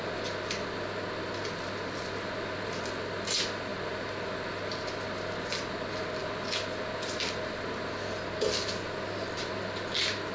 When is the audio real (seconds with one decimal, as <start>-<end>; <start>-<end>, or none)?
0.0-10.3

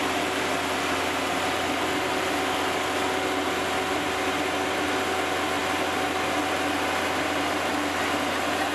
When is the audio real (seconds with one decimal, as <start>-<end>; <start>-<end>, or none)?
0.0-8.7

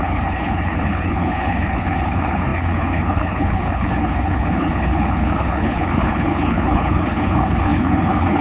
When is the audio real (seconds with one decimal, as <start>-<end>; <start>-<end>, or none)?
none

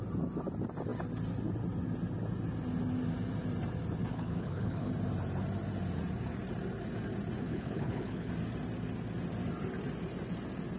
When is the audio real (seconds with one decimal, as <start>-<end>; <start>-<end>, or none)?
0.0-4.1; 4.9-7.5; 8.3-10.8

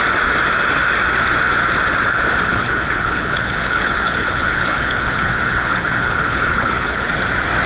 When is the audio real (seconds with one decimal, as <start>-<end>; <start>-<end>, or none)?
0.0-2.5; 7.1-7.7

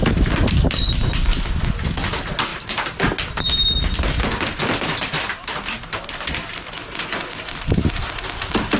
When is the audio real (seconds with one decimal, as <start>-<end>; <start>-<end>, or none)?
0.0-8.8

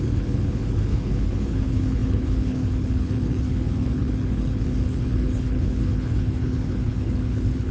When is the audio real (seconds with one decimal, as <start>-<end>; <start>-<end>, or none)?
none